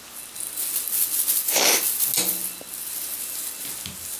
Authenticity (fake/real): real